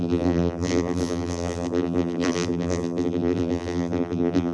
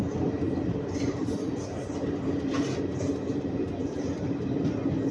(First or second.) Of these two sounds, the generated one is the first